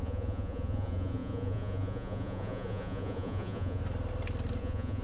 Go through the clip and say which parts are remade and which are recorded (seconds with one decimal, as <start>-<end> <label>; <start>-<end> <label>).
0.0-3.8 remade; 3.8-4.6 recorded; 4.6-5.0 remade